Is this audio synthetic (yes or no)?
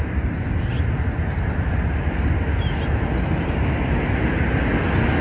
no